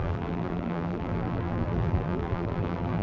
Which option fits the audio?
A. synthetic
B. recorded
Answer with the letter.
A